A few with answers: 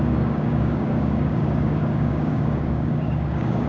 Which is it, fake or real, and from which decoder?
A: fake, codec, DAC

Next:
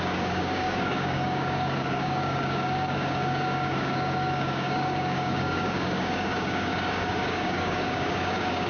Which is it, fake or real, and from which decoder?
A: fake, codec, DAC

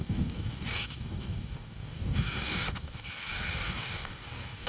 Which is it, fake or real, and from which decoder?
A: fake, codec, DAC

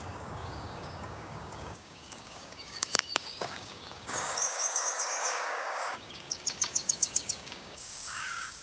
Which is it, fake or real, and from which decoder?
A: fake, codec, DAC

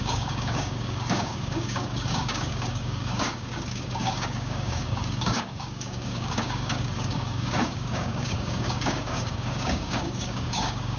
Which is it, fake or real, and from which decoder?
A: fake, codec, DAC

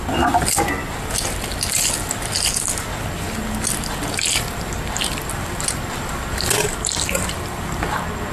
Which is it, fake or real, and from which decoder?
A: real